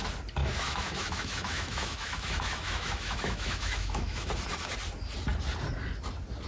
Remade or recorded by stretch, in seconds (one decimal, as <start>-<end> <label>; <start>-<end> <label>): 0.0-0.4 recorded; 0.4-4.3 remade; 4.3-6.5 recorded